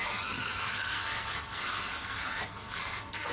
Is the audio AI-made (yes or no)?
yes